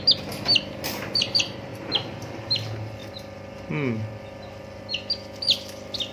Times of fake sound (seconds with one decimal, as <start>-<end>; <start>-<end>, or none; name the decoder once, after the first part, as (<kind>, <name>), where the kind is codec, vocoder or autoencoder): none